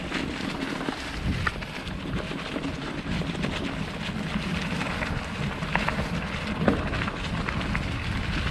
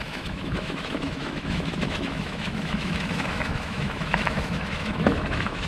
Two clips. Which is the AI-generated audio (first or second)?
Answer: second